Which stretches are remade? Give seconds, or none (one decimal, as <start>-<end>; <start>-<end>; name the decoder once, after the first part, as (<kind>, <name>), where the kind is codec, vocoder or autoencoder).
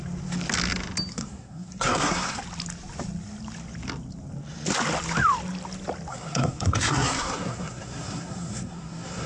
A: 1.1-2.4 (codec, SNAC); 6.1-9.3